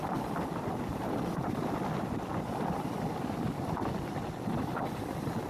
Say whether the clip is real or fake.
real